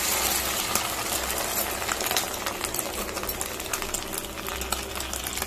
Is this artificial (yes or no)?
no